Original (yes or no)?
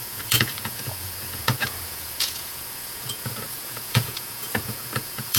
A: no